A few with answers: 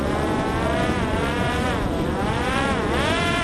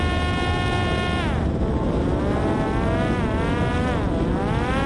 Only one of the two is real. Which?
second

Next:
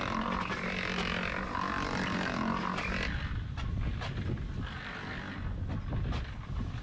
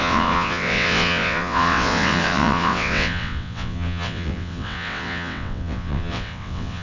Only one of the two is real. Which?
first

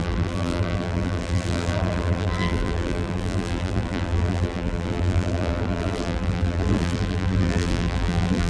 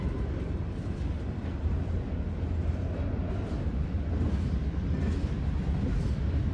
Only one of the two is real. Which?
second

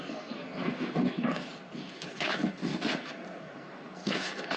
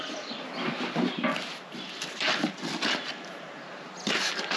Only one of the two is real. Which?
second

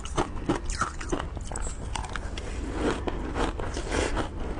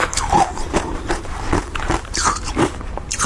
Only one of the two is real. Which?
first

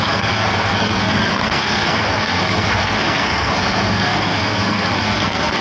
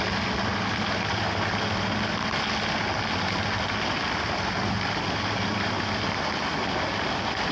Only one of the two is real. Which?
second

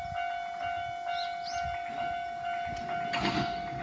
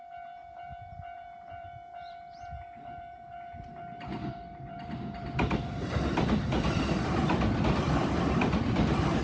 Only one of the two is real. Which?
first